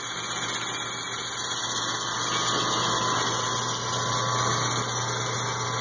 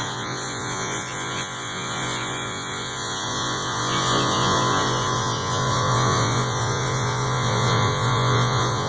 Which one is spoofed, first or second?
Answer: second